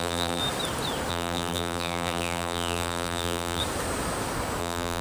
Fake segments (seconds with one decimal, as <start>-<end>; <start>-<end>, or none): 0.0-0.4; 1.1-3.6; 4.6-5.0